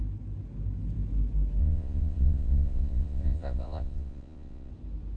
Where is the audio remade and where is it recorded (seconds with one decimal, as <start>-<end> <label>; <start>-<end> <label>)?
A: 0.0-1.6 recorded; 1.6-4.7 remade; 4.7-5.2 recorded